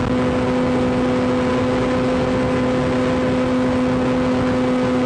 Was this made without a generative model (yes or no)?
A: yes